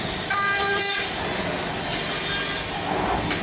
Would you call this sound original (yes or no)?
no